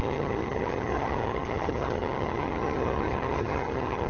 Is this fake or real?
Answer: fake